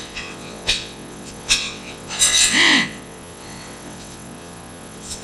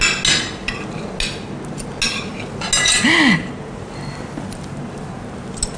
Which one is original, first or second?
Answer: second